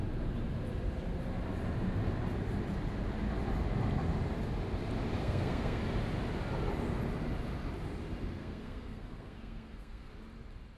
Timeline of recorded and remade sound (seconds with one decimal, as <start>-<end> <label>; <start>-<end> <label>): 0.0-5.2 recorded; 5.2-5.8 remade; 5.8-8.4 recorded; 8.4-10.1 remade; 10.1-10.8 recorded